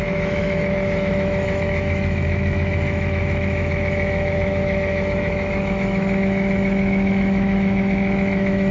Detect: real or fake fake